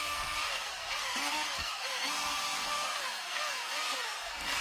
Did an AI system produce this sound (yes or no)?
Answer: yes